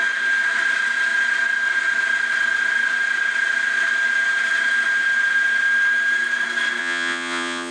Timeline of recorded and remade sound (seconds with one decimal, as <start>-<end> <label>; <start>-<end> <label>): 0.0-6.8 recorded; 6.8-7.7 remade